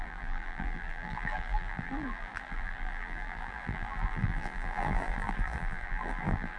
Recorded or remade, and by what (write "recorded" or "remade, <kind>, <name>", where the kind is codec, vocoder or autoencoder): remade, vocoder, BigVGAN v2